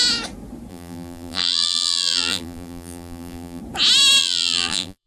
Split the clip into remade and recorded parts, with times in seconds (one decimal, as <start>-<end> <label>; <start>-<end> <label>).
0.0-0.7 recorded; 0.7-3.6 remade; 3.6-4.2 recorded; 4.2-5.1 remade